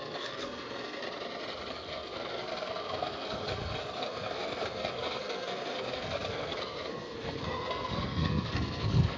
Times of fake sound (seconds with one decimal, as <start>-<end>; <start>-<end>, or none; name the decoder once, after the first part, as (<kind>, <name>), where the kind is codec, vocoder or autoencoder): 0.0-1.0 (codec, SNAC); 1.7-9.2